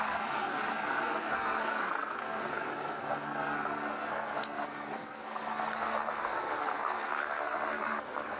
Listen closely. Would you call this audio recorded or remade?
remade